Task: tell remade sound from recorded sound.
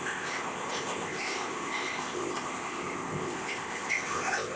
remade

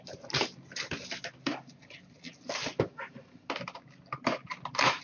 recorded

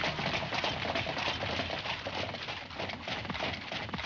recorded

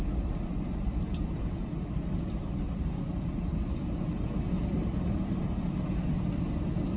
recorded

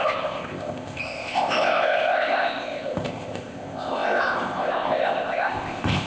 remade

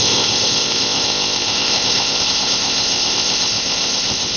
remade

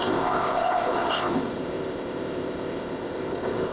remade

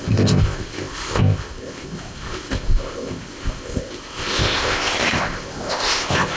remade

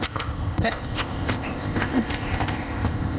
remade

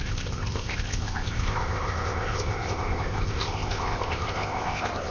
remade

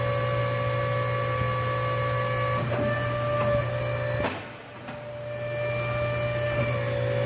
recorded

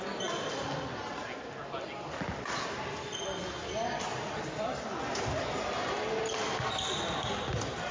recorded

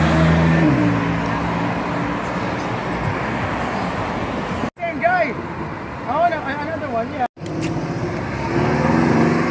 recorded